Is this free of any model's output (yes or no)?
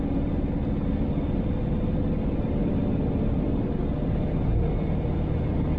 yes